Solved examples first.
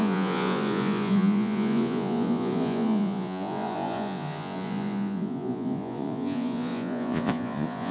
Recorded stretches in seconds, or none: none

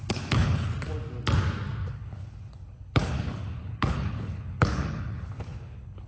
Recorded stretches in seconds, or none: 0.7-1.9